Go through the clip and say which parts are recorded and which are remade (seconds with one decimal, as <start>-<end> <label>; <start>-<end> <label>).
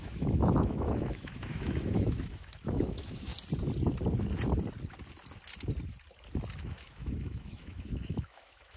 0.0-3.3 remade; 3.3-6.6 recorded; 6.6-8.8 remade